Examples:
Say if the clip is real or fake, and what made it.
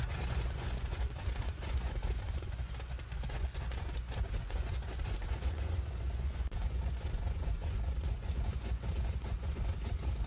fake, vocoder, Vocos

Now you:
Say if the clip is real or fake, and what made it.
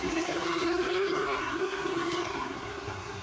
fake, codec, SNAC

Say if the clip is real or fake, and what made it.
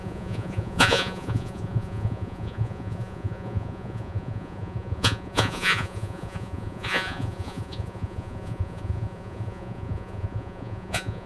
fake, vocoder, Vocos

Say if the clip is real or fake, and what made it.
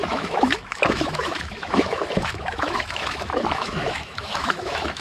fake, autoencoder, DAC-VAE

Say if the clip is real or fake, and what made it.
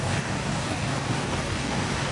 fake, codec, DAC